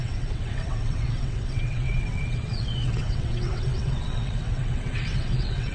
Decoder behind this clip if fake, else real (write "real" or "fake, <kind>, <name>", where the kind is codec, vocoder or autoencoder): fake, vocoder, WaveNeXt